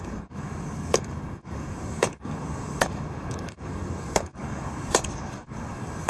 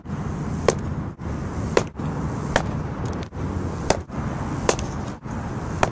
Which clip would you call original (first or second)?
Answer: second